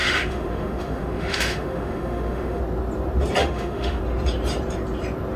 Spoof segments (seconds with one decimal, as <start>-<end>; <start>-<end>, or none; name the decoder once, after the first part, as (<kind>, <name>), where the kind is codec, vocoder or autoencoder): 0.0-2.6 (autoencoder, DAC-VAE); 3.4-4.0